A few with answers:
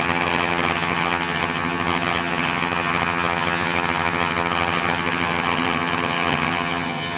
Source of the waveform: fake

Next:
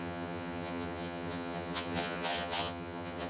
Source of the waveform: fake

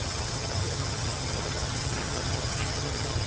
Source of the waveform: fake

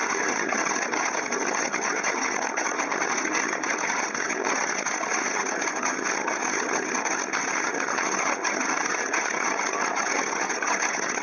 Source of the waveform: fake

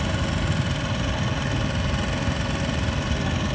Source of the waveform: real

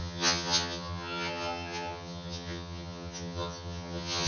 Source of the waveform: fake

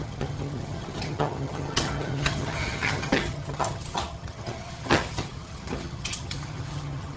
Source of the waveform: fake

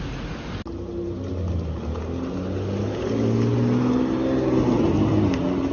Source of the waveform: real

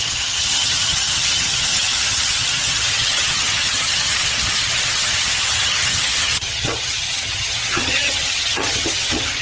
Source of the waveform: fake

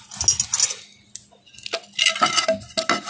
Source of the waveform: real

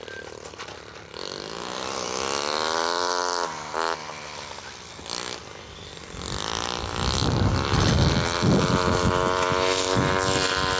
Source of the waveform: real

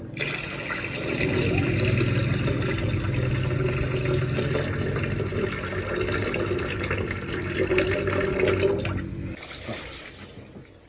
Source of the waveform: real